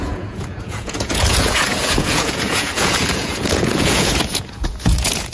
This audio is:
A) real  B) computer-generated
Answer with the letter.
B